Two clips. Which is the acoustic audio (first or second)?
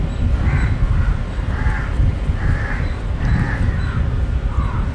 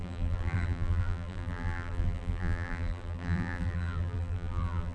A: first